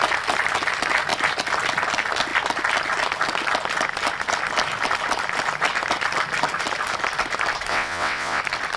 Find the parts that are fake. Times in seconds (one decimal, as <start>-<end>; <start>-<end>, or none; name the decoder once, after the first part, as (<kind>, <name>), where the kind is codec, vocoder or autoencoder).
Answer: 7.7-8.4 (vocoder, WaveNeXt)